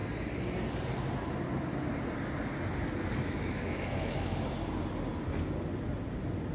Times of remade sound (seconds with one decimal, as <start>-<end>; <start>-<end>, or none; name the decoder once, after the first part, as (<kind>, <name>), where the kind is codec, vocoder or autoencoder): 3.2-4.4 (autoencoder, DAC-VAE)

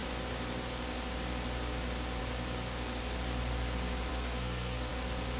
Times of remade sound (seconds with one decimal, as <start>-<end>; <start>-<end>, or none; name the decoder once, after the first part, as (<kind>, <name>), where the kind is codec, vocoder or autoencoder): 4.1-4.9 (codec, SNAC)

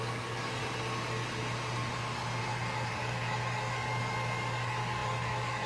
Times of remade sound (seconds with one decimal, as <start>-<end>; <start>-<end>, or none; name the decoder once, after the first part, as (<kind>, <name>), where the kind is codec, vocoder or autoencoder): 0.0-0.6 (codec, DAC); 2.9-5.7